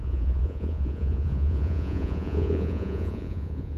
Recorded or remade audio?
remade